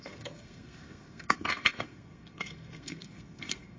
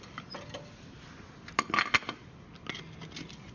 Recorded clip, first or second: second